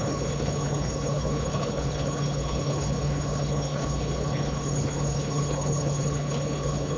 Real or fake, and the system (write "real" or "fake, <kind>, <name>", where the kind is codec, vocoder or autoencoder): fake, codec, HILCodec